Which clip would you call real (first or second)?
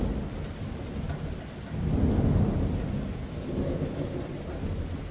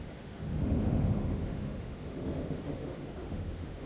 first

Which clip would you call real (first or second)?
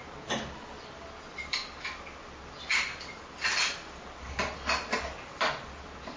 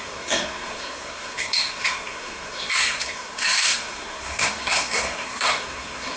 first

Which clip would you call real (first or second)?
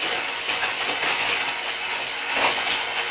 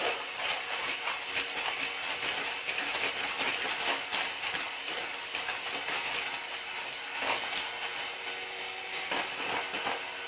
second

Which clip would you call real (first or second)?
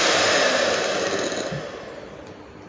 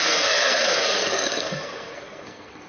first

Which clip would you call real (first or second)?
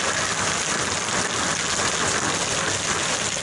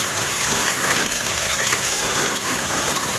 first